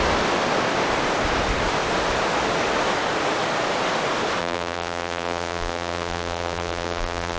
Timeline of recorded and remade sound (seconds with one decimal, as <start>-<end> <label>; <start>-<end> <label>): 0.0-4.4 recorded; 4.4-7.4 remade